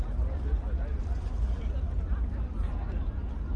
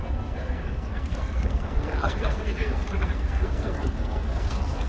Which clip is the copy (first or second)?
second